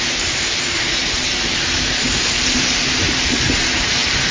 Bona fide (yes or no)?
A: no